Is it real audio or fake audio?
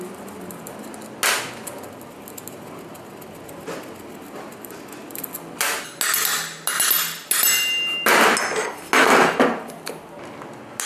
real